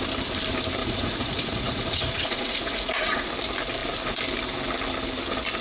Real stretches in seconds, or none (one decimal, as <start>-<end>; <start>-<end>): 0.0-0.8; 3.3-5.6